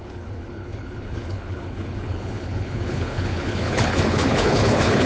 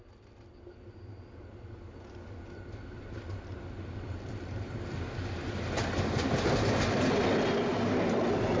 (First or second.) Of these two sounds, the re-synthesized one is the first